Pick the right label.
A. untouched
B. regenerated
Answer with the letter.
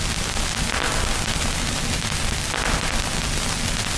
A